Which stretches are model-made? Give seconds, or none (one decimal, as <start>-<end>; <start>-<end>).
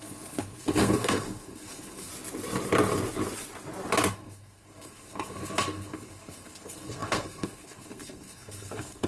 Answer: 0.0-2.1; 4.1-9.1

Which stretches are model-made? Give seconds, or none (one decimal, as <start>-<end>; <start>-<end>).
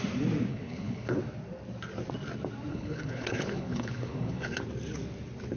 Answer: 0.5-1.2; 2.7-4.6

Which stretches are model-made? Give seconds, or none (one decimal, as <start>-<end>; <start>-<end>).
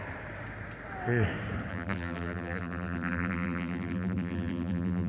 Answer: 1.7-5.1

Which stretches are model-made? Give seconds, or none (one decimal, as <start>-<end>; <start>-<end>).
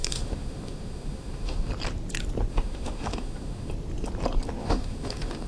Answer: 0.0-1.7; 2.5-3.7; 4.6-5.5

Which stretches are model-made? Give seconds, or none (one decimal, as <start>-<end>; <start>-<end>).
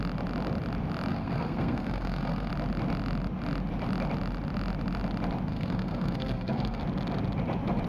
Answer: 1.1-2.5; 5.5-6.8